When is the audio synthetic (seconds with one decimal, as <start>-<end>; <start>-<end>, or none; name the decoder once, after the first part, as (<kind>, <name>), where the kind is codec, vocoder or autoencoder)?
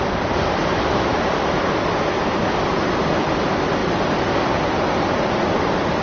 none